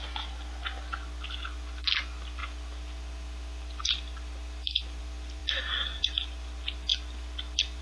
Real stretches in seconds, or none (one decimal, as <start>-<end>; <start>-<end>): 0.0-7.8